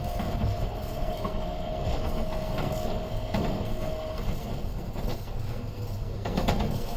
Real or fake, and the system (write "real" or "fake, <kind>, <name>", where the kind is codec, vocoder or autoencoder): fake, codec, SNAC